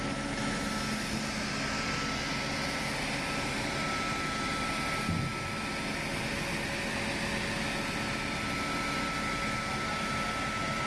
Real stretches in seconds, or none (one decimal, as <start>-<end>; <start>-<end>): 0.0-10.9